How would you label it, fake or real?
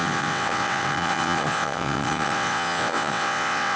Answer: fake